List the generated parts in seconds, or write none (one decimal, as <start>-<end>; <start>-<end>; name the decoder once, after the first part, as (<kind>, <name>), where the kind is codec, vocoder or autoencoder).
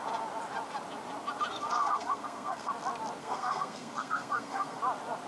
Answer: 1.5-2.7 (codec, SNAC); 3.2-4.8